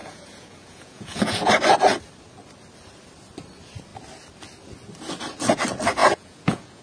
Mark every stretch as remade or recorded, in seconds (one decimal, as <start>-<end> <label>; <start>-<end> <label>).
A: 0.0-1.5 remade; 1.5-6.0 recorded; 6.0-6.8 remade